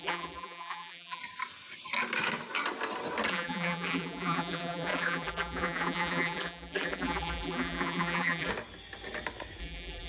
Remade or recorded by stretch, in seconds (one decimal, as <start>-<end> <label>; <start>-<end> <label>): 0.0-1.2 remade; 1.2-3.3 recorded; 3.3-8.5 remade; 8.5-9.6 recorded; 9.6-10.1 remade